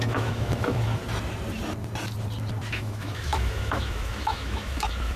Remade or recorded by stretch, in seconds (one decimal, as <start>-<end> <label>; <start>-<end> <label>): 0.0-1.0 remade; 1.0-2.7 recorded; 2.7-5.2 remade